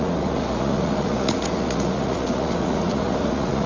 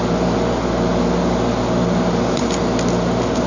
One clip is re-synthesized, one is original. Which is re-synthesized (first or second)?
first